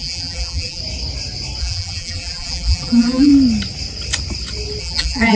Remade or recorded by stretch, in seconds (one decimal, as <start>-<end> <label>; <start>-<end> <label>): 0.0-0.8 remade; 0.8-1.6 recorded; 1.6-3.3 remade; 3.3-4.8 recorded; 4.8-5.3 remade